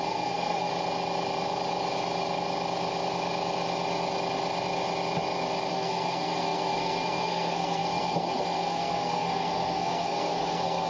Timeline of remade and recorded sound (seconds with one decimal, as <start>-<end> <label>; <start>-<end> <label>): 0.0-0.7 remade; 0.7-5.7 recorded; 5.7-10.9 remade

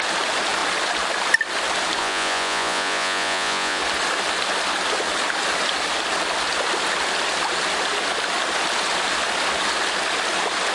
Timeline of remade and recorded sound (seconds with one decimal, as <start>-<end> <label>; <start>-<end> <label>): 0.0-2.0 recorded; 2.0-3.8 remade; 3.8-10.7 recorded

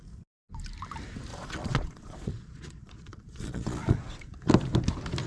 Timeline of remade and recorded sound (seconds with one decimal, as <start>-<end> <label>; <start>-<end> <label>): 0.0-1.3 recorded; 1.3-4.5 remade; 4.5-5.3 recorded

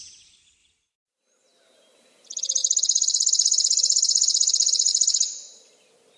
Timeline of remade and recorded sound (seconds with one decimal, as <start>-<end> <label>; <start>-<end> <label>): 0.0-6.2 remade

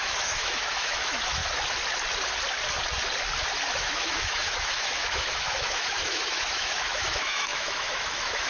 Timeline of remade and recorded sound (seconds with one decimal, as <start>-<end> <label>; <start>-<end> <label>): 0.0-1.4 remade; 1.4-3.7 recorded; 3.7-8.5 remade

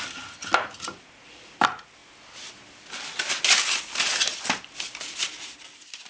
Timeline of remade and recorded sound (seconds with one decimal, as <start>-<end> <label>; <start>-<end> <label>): 0.0-6.1 recorded

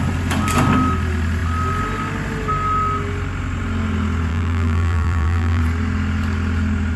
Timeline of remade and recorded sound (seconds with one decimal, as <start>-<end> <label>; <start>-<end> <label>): 0.0-4.3 recorded; 4.3-5.6 remade; 5.6-7.0 recorded

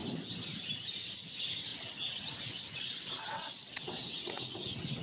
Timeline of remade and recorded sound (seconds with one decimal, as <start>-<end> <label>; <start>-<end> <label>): 0.0-1.7 recorded; 1.7-5.0 remade